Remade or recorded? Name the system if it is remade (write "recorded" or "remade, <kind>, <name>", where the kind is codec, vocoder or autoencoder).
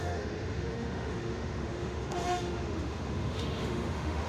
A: remade, autoencoder, DAC-VAE